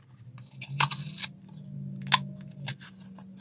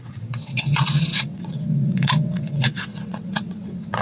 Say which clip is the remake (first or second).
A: second